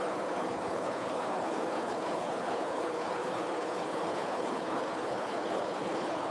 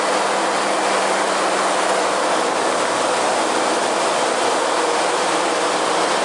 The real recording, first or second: second